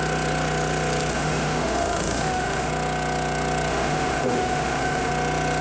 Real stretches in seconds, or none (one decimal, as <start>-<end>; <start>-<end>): 0.0-1.1; 2.7-3.7; 5.1-5.6